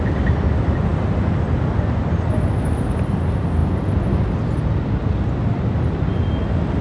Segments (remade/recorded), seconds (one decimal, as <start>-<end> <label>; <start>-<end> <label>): 0.0-6.8 recorded

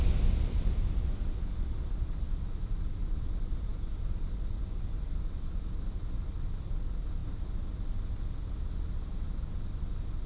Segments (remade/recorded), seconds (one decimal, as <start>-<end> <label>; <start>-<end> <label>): 0.0-10.3 recorded